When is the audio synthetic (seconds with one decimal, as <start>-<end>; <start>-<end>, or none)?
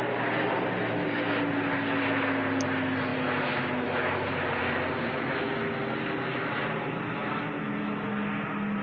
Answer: none